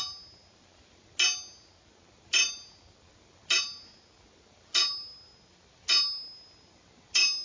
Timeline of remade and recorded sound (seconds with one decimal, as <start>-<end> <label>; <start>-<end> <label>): 0.0-7.4 recorded